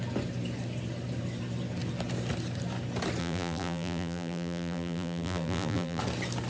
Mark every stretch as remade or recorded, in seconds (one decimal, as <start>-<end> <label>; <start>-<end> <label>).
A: 0.0-3.2 recorded; 3.2-6.0 remade; 6.0-6.5 recorded